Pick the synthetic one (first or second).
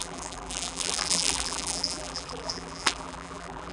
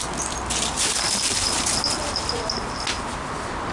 first